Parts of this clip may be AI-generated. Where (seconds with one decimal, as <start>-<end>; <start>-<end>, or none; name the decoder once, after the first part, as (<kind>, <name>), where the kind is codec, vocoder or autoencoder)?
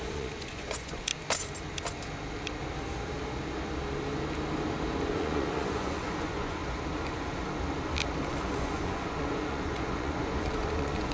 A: 0.0-1.1 (vocoder, Vocos); 5.1-6.6; 8.3-11.1